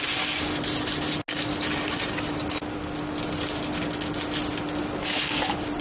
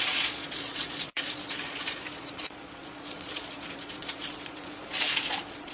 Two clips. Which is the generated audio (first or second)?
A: second